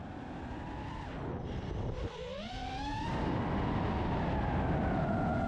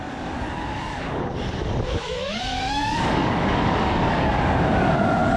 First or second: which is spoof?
second